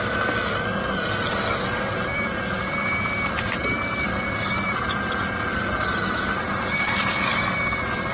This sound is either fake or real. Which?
real